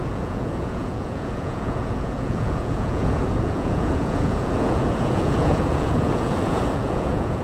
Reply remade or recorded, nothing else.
remade